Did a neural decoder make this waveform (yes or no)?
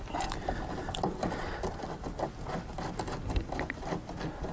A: no